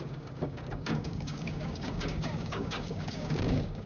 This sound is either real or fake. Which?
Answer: fake